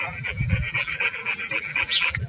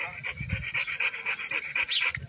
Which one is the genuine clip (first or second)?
second